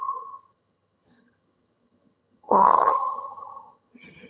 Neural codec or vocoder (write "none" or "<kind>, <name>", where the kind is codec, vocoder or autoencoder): vocoder, HiFi-GAN